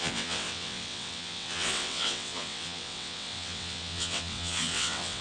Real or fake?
fake